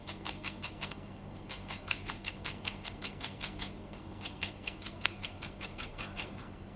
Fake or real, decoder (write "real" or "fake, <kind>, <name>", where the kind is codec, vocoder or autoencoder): fake, codec, SNAC